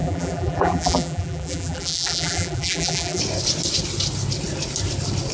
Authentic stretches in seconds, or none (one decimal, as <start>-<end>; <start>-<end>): 3.2-5.3